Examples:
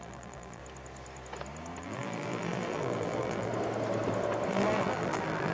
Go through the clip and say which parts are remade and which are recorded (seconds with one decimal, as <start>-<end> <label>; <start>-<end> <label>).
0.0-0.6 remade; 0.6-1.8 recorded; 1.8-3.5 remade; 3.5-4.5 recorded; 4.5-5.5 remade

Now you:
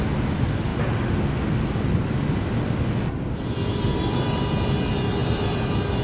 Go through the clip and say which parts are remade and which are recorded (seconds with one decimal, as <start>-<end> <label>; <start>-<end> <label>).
0.0-0.7 remade; 0.7-3.6 recorded; 3.6-6.0 remade

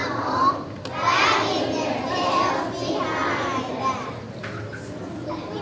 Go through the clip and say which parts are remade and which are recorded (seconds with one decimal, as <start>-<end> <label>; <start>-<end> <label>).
0.0-0.5 remade; 0.5-5.6 recorded

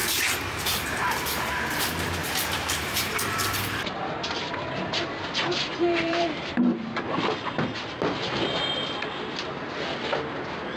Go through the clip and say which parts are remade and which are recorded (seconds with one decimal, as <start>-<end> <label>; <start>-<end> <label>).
0.0-1.5 remade; 1.5-2.2 recorded; 2.2-5.0 remade; 5.0-5.7 recorded; 5.7-6.8 remade; 6.8-10.8 recorded